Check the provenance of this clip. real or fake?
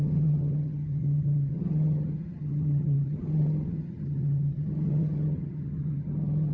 fake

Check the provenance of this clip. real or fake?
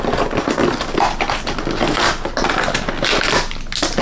real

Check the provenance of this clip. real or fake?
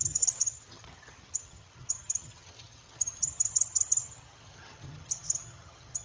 fake